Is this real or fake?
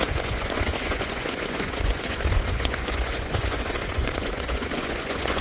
fake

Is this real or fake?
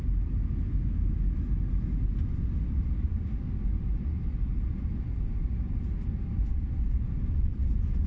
real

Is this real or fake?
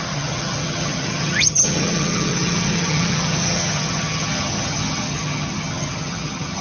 fake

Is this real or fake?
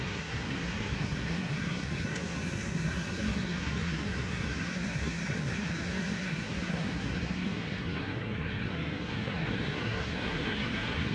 fake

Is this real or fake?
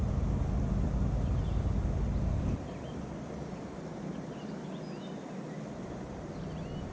real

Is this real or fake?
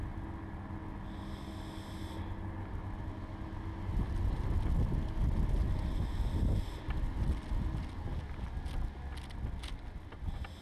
real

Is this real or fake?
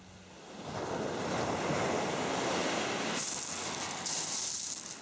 real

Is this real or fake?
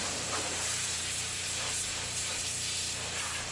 fake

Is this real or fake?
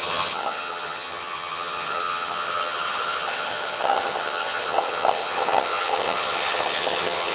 fake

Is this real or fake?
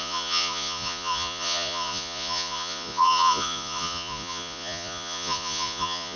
fake